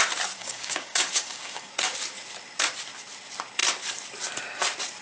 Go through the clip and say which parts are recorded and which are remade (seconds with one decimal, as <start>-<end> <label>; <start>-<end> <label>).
0.0-0.4 recorded; 0.4-1.7 remade; 1.7-5.0 recorded